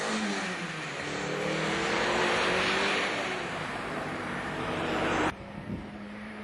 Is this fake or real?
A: fake